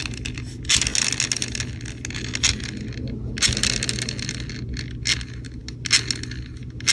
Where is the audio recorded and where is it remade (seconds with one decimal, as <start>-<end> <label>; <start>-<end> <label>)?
0.0-6.9 recorded